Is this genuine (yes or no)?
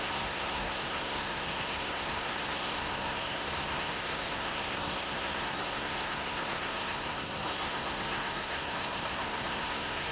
no